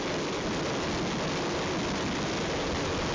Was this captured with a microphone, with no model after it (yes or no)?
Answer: yes